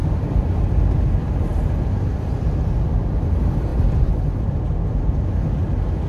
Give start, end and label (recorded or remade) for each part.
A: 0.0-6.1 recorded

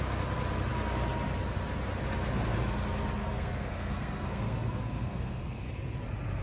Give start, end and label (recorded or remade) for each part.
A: 0.0-3.2 recorded; 3.2-5.6 remade; 5.6-6.4 recorded

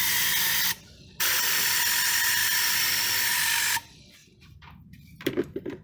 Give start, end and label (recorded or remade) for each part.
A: 0.0-4.2 recorded; 4.2-5.3 remade; 5.3-5.8 recorded

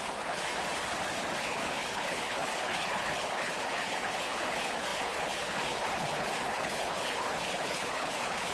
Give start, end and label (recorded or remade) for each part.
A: 0.0-0.5 remade; 0.5-1.4 recorded; 1.4-8.5 remade

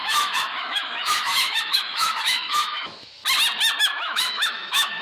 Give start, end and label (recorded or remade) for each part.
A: 0.0-3.2 remade; 3.2-3.8 recorded; 3.8-5.0 remade